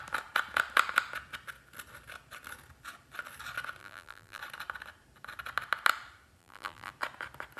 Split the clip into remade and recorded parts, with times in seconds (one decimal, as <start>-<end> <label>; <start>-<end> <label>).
0.0-3.8 recorded; 3.8-4.4 remade; 4.4-6.4 recorded; 6.4-6.9 remade; 6.9-7.6 recorded